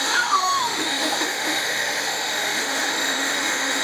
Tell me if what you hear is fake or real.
fake